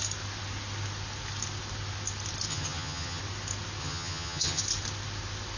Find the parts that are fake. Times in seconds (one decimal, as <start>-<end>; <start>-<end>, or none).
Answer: 2.5-3.2; 3.8-4.6